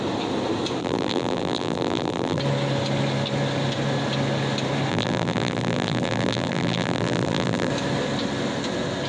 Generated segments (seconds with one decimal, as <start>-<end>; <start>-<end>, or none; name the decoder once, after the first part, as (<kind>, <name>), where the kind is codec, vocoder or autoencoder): 0.8-2.4 (vocoder, BigVGAN v2); 4.9-7.7